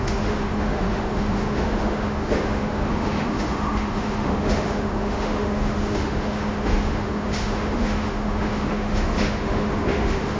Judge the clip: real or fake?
fake